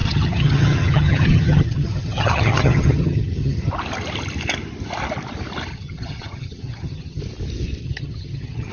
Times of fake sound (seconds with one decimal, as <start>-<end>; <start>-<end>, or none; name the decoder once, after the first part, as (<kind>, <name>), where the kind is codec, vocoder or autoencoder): 0.0-3.7 (vocoder, HiFi-GAN); 5.7-7.2; 7.8-8.7